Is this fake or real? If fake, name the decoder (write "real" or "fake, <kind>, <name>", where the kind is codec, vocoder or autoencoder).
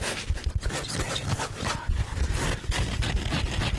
real